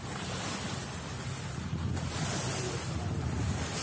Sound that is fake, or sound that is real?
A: real